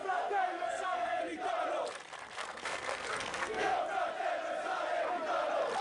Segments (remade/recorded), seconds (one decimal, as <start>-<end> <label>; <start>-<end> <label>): 0.0-1.2 remade; 1.2-2.4 recorded; 2.4-3.8 remade; 3.8-5.8 recorded